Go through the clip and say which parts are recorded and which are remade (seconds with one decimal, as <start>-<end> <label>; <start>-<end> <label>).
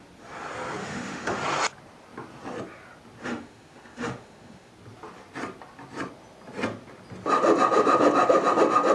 0.0-0.8 recorded; 0.8-1.4 remade; 1.4-3.2 recorded; 3.2-4.7 remade; 4.7-8.9 recorded